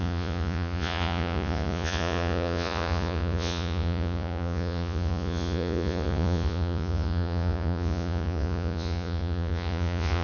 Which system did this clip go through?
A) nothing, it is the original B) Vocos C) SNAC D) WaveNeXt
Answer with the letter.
B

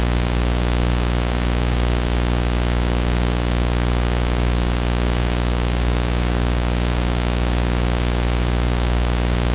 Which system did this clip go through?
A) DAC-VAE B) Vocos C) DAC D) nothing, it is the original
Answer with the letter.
C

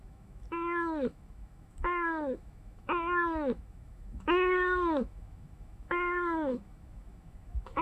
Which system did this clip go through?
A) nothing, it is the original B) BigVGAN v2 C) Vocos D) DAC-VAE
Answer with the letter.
D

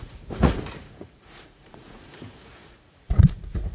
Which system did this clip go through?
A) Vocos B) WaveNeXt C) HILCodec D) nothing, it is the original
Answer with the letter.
A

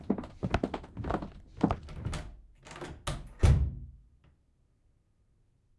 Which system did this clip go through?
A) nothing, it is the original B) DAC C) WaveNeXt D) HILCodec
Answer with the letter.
A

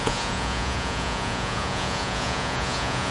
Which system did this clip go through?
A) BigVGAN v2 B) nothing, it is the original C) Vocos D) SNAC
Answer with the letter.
C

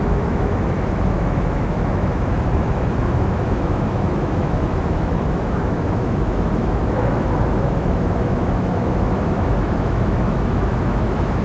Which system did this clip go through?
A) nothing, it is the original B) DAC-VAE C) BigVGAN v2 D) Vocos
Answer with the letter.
B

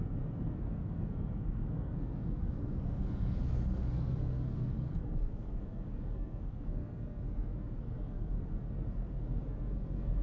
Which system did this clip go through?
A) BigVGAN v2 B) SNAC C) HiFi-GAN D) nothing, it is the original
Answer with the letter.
B